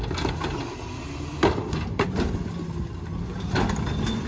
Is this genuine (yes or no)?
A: yes